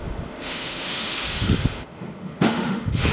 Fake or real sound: fake